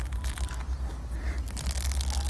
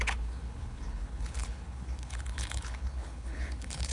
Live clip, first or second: first